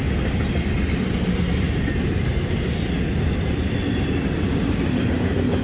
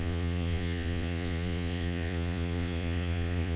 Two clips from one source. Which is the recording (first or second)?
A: first